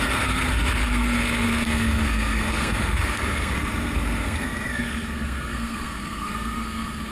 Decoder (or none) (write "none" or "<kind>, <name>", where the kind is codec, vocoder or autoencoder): codec, SNAC